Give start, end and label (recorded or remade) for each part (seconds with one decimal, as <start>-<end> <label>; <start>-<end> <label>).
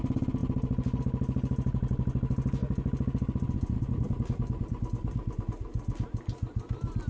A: 0.0-7.1 recorded